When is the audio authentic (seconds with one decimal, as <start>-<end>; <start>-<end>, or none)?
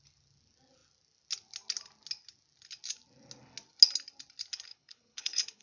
0.0-4.7